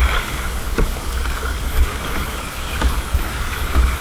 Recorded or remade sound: remade